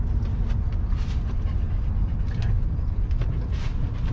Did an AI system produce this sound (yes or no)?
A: no